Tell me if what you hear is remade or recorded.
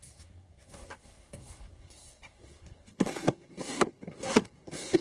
remade